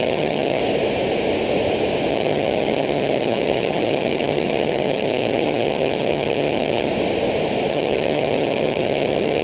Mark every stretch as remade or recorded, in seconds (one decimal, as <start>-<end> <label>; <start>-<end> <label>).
0.0-0.6 remade; 0.6-2.1 recorded; 2.1-6.9 remade; 6.9-7.7 recorded; 7.7-9.4 remade

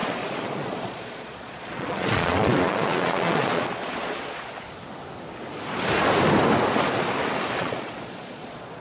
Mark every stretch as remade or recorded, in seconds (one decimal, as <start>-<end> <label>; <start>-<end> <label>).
0.0-4.5 remade; 4.5-7.6 recorded; 7.6-8.8 remade

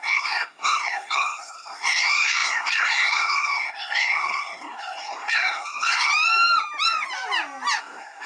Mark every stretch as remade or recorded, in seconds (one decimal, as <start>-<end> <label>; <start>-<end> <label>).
0.0-6.1 remade; 6.1-7.8 recorded; 7.8-8.3 remade

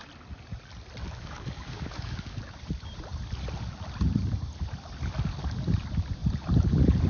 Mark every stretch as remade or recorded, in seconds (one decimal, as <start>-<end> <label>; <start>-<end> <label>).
0.0-1.0 recorded; 1.0-2.4 remade; 2.4-7.1 recorded

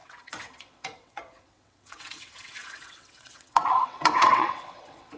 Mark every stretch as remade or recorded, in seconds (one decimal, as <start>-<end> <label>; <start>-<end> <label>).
0.0-5.2 remade

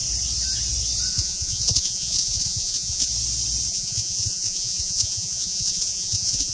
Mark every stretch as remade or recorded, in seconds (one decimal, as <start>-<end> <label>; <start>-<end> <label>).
0.0-1.1 recorded; 1.1-3.1 remade; 3.1-3.7 recorded; 3.7-6.5 remade

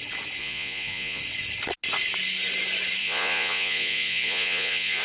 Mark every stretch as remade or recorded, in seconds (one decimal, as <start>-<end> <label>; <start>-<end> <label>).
0.0-0.4 recorded; 0.4-1.2 remade; 1.2-3.0 recorded; 3.0-5.0 remade